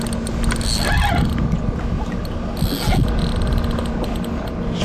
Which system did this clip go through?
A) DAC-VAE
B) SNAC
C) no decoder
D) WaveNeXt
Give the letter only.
C